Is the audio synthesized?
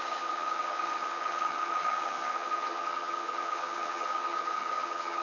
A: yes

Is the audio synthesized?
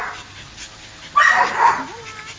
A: no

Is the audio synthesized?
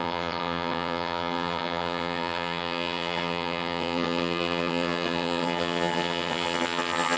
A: yes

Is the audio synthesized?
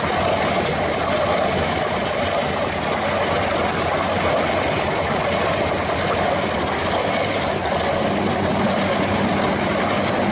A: no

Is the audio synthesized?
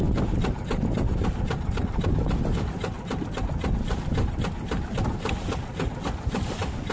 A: no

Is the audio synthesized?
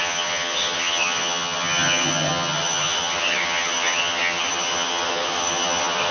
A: yes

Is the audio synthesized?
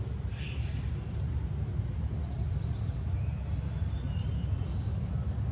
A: no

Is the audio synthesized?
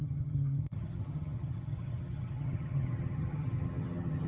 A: yes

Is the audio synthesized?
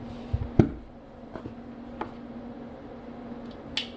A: no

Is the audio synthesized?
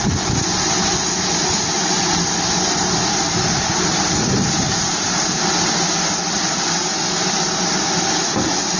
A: no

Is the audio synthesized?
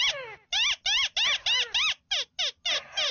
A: no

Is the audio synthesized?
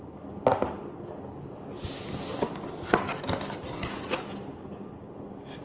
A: no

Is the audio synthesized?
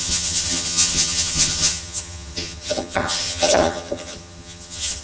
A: yes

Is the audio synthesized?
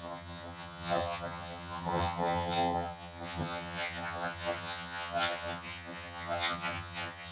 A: yes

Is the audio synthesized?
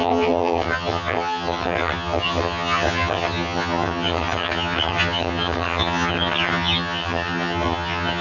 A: yes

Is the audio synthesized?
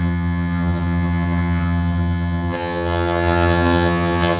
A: yes